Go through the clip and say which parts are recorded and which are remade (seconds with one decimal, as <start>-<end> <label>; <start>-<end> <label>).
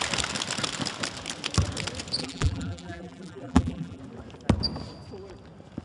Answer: 0.0-2.2 recorded; 2.2-4.0 remade; 4.0-5.8 recorded